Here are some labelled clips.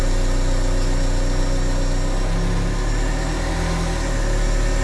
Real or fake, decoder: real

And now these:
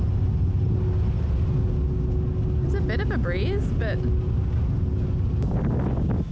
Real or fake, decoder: real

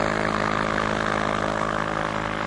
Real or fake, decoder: real